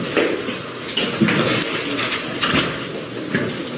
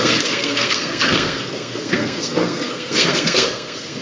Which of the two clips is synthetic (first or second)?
second